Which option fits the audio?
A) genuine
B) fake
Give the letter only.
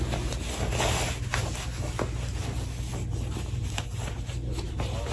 A